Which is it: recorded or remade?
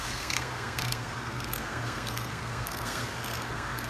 remade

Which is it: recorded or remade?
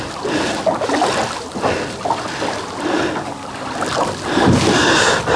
recorded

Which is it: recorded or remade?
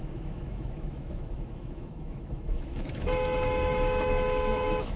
remade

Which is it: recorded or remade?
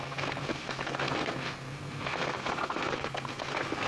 remade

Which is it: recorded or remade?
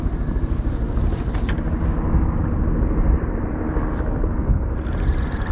recorded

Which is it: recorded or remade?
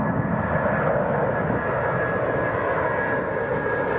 recorded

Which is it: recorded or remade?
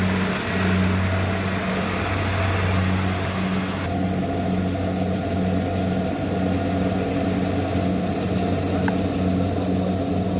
recorded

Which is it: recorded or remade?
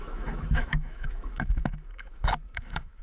remade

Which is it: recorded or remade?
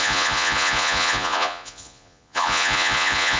remade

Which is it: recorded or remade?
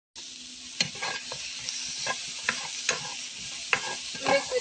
recorded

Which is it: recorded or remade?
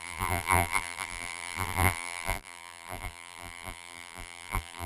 remade